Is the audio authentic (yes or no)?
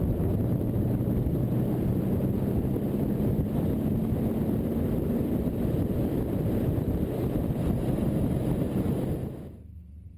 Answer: yes